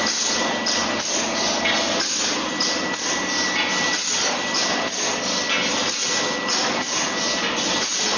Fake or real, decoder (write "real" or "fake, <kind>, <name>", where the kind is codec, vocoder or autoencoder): real